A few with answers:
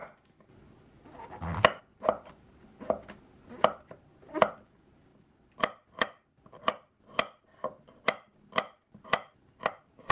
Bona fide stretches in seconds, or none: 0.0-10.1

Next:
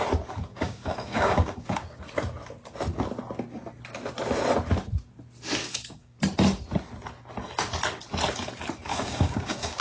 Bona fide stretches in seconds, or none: 0.0-0.5; 2.0-5.6; 6.2-8.9

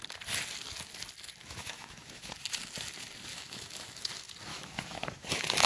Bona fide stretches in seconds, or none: 0.0-1.4; 2.3-3.3; 4.1-4.5

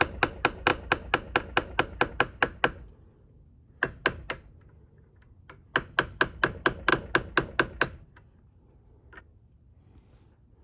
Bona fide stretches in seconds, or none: 0.0-10.6

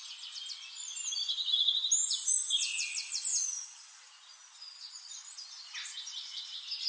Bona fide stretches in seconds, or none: 0.0-3.3; 4.0-4.4; 5.1-6.9